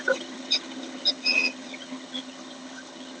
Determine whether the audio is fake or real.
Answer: fake